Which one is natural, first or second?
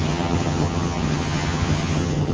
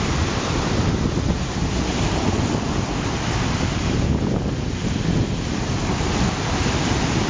second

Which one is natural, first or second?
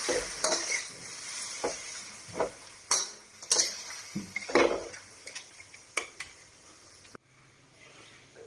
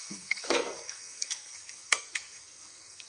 first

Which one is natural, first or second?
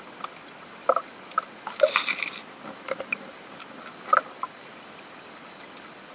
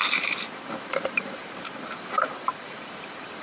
first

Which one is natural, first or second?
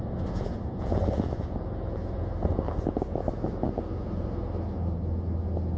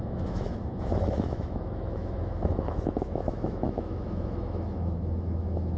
first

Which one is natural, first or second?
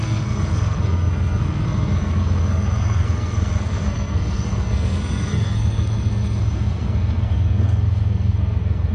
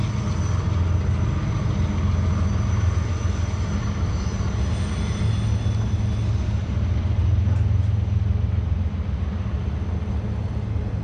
second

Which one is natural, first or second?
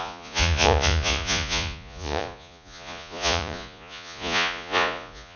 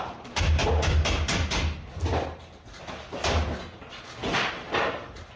second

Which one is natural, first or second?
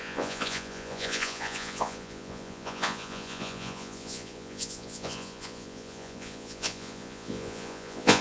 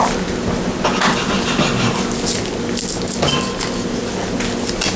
second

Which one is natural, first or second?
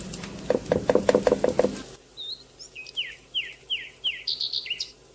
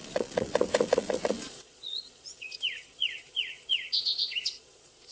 first